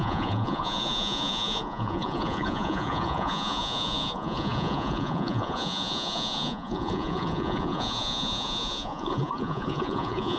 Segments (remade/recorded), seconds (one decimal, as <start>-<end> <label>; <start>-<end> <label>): 0.0-10.4 remade